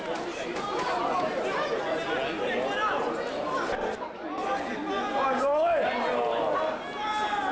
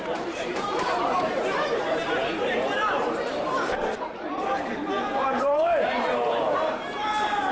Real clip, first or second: first